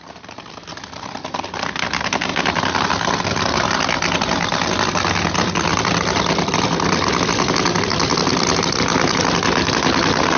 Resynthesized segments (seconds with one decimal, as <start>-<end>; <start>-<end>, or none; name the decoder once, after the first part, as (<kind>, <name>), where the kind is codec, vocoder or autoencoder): none